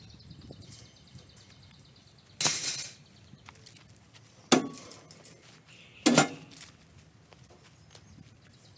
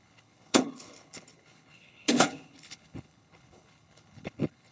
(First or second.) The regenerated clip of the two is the second